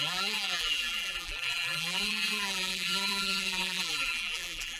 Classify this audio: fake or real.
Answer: fake